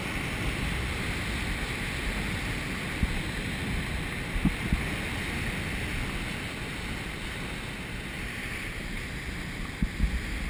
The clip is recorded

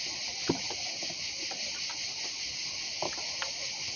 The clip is recorded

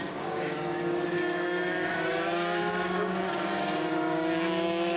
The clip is remade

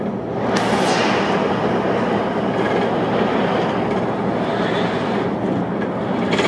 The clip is recorded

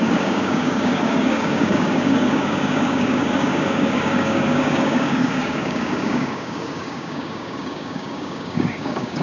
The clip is remade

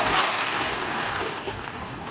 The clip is remade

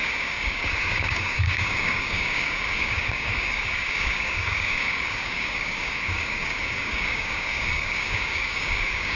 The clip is remade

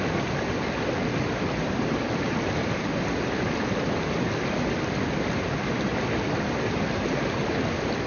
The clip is recorded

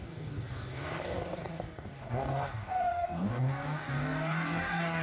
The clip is remade